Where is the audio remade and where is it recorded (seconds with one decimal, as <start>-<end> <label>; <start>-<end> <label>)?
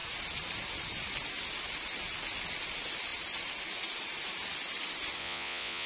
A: 0.0-5.2 recorded; 5.2-5.9 remade